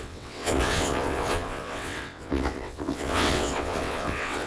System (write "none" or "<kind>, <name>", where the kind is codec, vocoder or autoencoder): vocoder, WaveNeXt